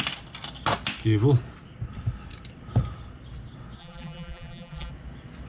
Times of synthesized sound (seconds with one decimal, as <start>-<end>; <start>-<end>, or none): 3.8-4.9